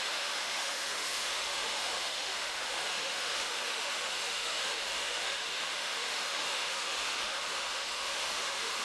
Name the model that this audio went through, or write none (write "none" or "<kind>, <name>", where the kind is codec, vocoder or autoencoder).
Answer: autoencoder, DAC-VAE